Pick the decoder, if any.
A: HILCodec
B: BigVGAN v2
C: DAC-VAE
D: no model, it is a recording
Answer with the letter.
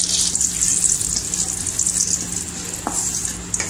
D